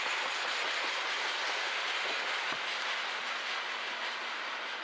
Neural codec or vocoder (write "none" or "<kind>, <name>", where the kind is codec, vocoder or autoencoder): none